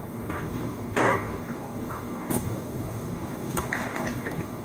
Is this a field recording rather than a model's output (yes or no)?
no